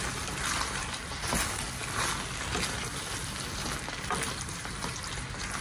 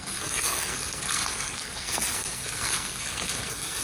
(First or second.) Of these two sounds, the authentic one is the first